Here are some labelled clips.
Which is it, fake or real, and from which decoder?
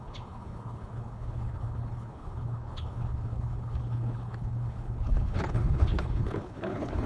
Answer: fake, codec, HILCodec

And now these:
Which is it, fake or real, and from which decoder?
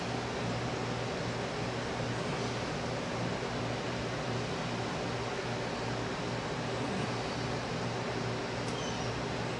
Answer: real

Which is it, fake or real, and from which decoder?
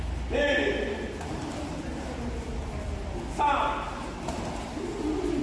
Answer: real